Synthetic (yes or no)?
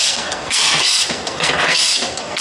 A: yes